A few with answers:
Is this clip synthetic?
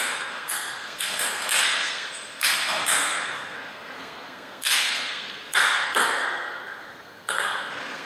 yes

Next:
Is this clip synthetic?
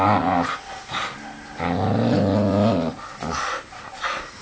no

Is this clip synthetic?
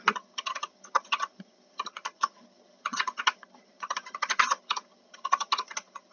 yes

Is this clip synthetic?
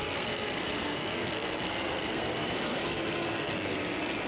yes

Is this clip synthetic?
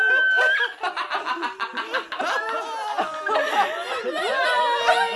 no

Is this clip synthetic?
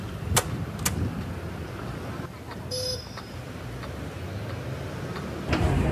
no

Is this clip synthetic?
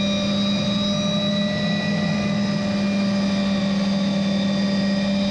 no